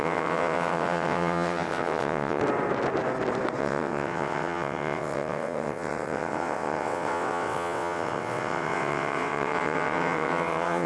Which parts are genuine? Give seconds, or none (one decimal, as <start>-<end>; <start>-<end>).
2.4-3.6